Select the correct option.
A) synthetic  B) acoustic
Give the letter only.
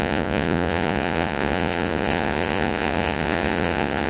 A